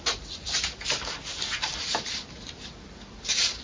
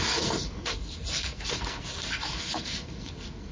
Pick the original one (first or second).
first